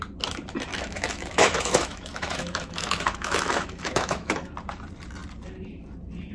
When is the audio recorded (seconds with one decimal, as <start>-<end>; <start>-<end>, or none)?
0.0-0.7; 4.5-6.3